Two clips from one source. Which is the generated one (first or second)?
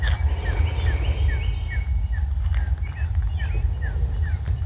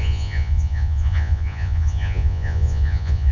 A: second